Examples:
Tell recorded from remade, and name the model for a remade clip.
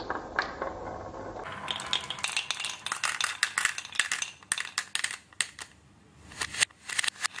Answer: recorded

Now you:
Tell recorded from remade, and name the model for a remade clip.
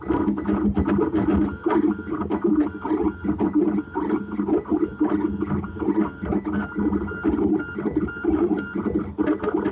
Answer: recorded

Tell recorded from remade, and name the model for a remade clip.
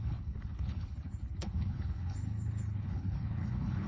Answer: remade, codec, HILCodec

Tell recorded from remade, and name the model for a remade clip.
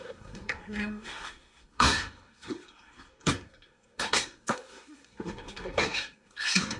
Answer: remade, codec, SNAC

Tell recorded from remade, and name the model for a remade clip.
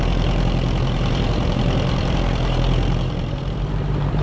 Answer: remade, vocoder, BigVGAN v2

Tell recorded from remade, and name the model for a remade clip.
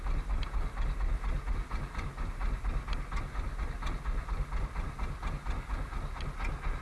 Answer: recorded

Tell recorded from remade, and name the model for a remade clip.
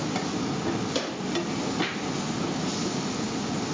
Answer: recorded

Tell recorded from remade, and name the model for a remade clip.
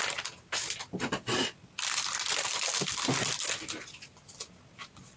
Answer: recorded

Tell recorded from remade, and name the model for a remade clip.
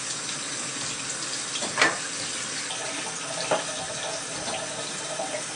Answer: recorded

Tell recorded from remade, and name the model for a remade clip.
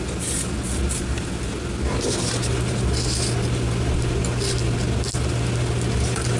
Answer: recorded